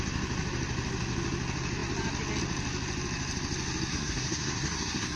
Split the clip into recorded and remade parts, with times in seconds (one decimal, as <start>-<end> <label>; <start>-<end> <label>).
0.0-3.9 recorded; 3.9-5.2 remade